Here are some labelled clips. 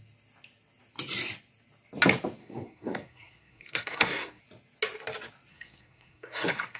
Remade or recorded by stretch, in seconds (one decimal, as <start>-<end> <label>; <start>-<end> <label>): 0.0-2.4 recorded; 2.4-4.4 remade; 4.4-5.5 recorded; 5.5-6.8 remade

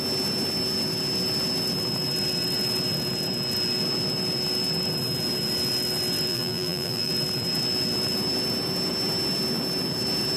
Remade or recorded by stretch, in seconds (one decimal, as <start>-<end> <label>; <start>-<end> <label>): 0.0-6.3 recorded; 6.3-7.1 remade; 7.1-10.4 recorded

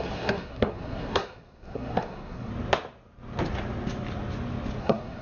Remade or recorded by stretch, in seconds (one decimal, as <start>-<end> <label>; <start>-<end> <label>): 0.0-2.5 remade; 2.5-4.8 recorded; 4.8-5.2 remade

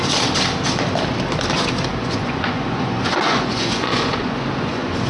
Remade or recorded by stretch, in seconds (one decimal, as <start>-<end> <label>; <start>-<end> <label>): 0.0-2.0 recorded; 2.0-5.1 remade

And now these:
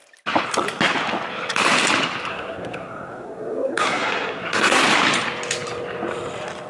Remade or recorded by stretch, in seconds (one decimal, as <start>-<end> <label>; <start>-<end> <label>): 0.0-2.3 recorded; 2.3-4.8 remade; 4.8-6.7 recorded

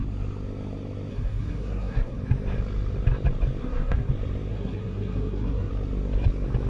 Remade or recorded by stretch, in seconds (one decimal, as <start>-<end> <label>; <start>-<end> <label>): 0.0-1.1 recorded; 1.1-2.2 remade; 2.2-3.6 recorded; 3.6-4.1 remade; 4.1-4.5 recorded; 4.5-5.7 remade; 5.7-6.7 recorded

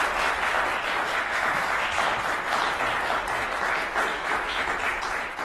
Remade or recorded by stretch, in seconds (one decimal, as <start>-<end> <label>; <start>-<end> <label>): 0.0-1.3 recorded; 1.3-2.2 remade; 2.2-4.1 recorded; 4.1-4.7 remade; 4.7-5.4 recorded